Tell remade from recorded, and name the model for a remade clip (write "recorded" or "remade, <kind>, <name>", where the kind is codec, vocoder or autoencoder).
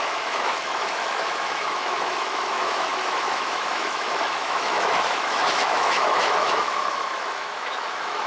remade, autoencoder, DAC-VAE